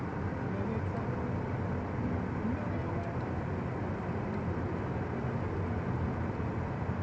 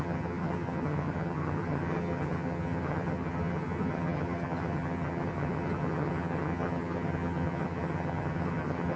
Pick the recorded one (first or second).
first